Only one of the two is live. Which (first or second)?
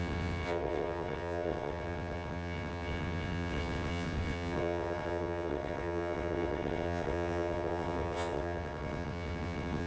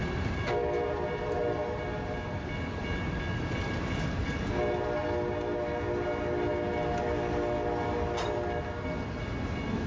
second